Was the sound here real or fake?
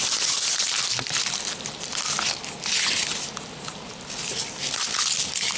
fake